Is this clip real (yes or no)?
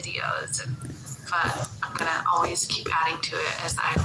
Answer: yes